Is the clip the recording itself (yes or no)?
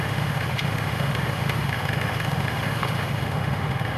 no